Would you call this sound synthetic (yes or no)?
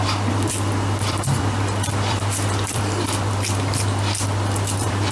yes